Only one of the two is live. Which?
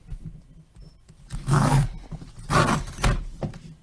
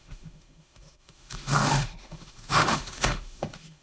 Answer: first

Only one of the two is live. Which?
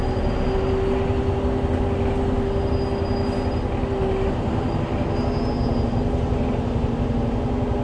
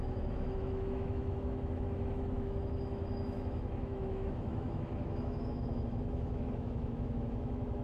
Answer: first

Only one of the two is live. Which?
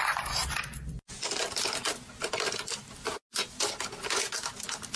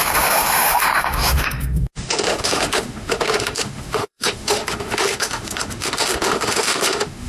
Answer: first